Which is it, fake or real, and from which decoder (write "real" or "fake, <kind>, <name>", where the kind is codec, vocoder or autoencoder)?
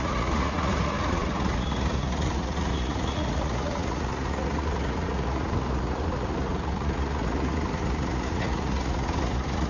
fake, vocoder, Vocos